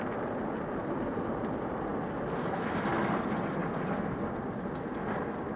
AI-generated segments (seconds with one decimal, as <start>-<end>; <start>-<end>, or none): none